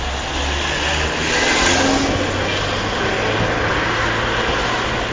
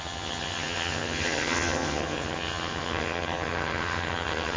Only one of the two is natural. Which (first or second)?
first